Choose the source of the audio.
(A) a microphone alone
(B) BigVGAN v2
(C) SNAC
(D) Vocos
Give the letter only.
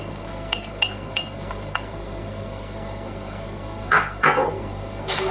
C